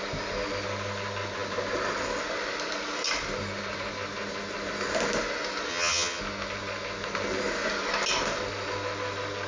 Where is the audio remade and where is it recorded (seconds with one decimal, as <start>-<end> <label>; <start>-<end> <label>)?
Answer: 0.0-5.7 recorded; 5.7-6.2 remade; 6.2-9.5 recorded